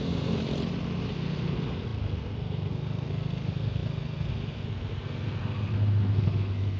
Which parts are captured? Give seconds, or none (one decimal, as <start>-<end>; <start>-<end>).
0.4-1.1